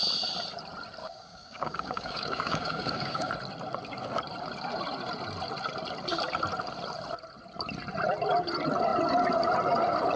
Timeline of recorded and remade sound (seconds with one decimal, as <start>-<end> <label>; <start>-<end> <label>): 0.0-1.0 recorded; 1.0-3.3 remade; 3.3-10.2 recorded